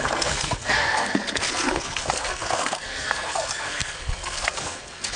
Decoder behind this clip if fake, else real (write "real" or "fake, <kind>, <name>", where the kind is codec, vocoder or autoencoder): fake, codec, SNAC